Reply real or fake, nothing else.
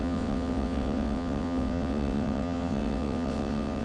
fake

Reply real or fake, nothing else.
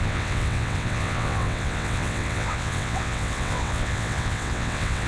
fake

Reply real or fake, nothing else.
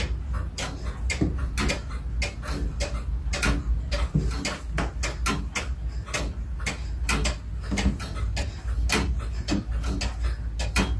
real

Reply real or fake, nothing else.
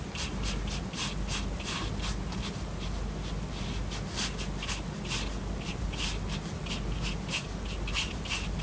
real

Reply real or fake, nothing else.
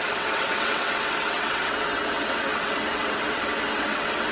fake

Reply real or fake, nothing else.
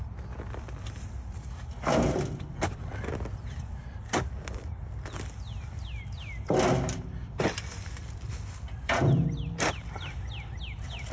real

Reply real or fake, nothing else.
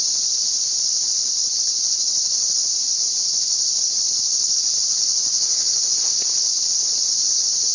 fake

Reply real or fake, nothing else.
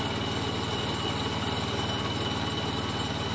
real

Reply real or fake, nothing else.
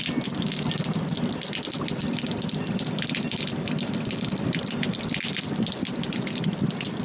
real